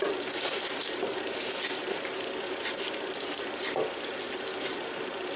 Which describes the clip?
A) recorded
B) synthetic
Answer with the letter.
B